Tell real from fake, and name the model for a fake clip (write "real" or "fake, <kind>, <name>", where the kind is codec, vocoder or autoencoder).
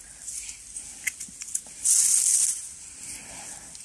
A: real